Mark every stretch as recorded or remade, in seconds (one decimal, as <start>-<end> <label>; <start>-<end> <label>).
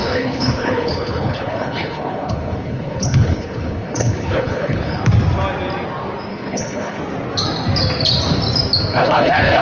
0.0-5.0 remade; 5.0-6.3 recorded; 6.3-7.0 remade; 7.0-8.9 recorded; 8.9-9.6 remade